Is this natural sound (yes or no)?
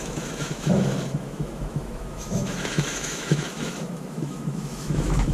no